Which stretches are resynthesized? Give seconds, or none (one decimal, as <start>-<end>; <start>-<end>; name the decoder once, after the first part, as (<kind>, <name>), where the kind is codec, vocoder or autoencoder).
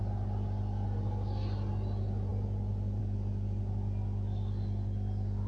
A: none